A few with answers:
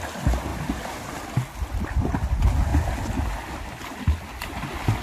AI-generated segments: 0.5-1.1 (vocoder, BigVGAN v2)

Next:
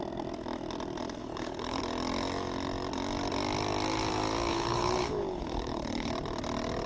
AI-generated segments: 1.2-1.8 (codec, HILCodec); 4.5-6.1

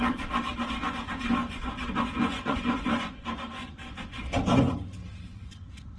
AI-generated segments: 1.4-4.2 (vocoder, Vocos)

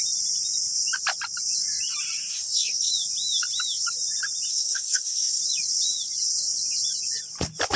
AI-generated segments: 2.3-2.9 (codec, SNAC); 4.5-5.4